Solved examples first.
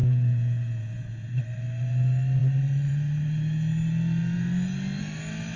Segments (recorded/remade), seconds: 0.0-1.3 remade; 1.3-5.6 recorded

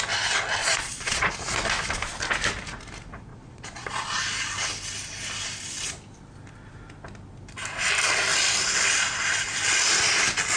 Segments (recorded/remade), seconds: 0.0-0.6 recorded; 0.6-1.3 remade; 1.3-3.3 recorded; 3.3-4.2 remade; 4.2-10.6 recorded

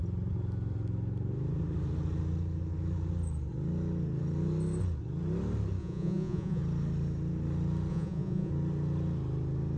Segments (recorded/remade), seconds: 0.0-5.8 recorded; 5.8-6.6 remade; 6.6-7.9 recorded; 7.9-8.5 remade; 8.5-9.8 recorded